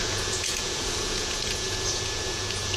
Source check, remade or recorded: remade